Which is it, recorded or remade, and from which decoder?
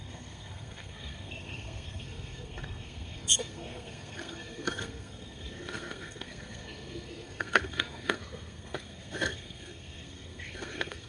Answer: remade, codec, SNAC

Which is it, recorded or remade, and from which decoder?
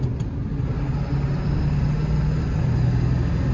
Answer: recorded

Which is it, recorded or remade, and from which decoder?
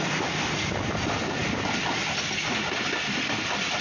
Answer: recorded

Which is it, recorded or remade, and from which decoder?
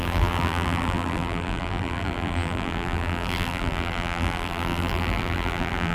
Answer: remade, vocoder, BigVGAN v2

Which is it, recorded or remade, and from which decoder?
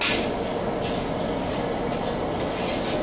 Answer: recorded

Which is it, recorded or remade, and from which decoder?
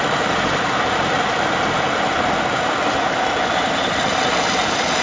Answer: remade, vocoder, BigVGAN v2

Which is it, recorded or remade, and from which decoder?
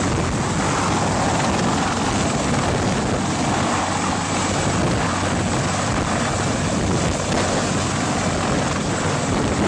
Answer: recorded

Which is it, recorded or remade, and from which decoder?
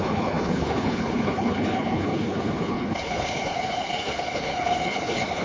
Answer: remade, codec, HILCodec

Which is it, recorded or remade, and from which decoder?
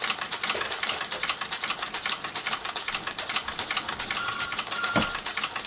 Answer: recorded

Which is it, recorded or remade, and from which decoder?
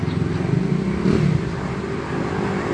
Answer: recorded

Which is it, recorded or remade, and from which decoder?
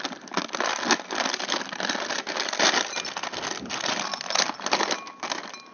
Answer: recorded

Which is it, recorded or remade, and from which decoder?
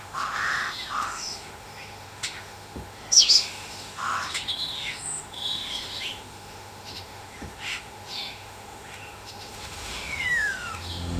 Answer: remade, autoencoder, DAC-VAE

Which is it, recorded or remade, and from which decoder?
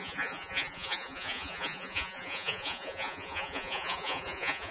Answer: remade, vocoder, Vocos